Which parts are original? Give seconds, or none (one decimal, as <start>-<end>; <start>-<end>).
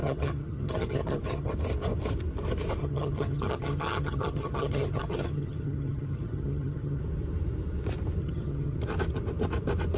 1.5-2.8; 7.0-8.2; 8.8-10.0